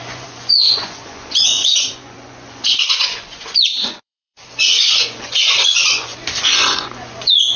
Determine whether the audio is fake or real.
fake